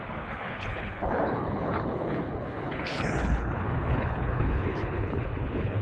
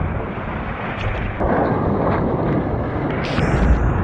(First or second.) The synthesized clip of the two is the first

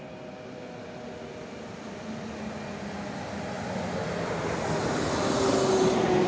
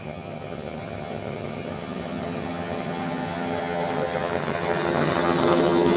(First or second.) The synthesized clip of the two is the second